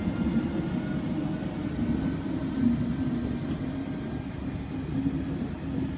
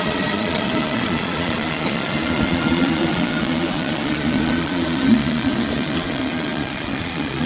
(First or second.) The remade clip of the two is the second